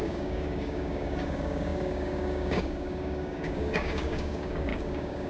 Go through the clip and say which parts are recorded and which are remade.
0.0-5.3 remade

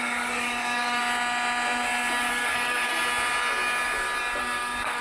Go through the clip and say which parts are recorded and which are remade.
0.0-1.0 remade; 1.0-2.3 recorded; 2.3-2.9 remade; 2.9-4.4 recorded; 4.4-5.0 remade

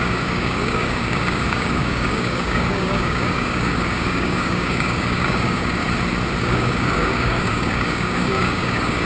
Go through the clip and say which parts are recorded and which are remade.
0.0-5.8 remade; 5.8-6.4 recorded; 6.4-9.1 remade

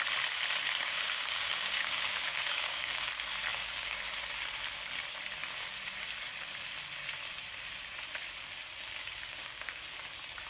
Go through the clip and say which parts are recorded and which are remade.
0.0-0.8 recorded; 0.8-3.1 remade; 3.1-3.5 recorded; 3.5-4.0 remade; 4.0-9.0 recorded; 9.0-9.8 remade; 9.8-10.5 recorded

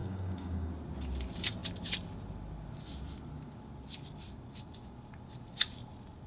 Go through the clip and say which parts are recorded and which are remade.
0.0-0.7 remade; 0.7-6.3 recorded

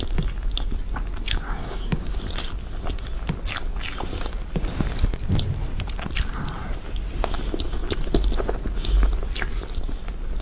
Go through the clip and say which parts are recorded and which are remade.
0.0-1.6 recorded; 1.6-2.2 remade; 2.2-10.4 recorded